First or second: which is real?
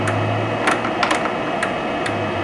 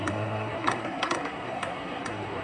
first